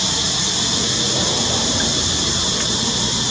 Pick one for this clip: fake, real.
real